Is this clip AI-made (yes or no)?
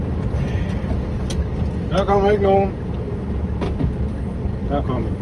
no